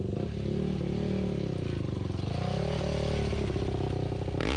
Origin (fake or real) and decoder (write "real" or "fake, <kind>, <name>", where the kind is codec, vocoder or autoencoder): real